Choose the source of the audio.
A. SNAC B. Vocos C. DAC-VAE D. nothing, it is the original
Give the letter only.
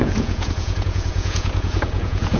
B